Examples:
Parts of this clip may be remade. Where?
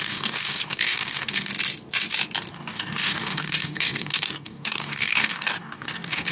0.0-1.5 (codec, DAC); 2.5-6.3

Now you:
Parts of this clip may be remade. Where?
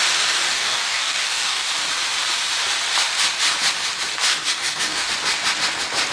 0.5-1.7 (codec, DAC); 4.3-5.1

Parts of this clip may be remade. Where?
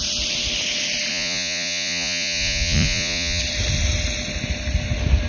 1.1-3.4 (vocoder, Vocos)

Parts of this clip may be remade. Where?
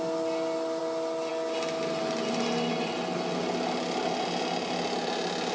none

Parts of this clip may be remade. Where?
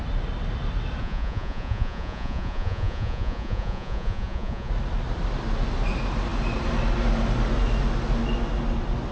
1.0-4.7 (vocoder, Vocos)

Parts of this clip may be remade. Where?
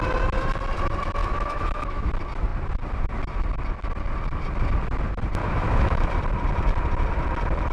1.2-2.1 (autoencoder, DAC-VAE); 5.4-6.1